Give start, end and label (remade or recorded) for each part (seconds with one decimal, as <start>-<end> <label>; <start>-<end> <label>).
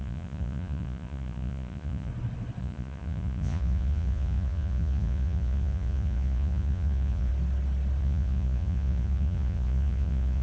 0.0-2.1 remade; 2.1-2.6 recorded; 2.6-7.3 remade; 7.3-8.0 recorded; 8.0-10.4 remade